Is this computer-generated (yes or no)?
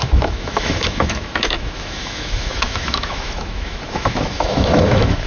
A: yes